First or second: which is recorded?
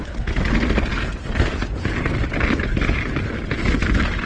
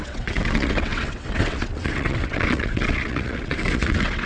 first